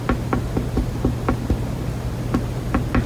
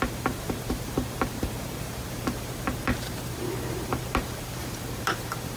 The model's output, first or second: second